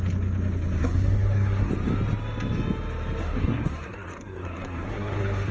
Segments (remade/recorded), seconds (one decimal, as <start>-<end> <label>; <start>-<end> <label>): 0.0-0.8 recorded; 0.8-1.7 remade; 1.7-3.2 recorded; 3.2-5.5 remade